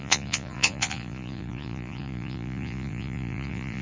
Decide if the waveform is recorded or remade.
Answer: remade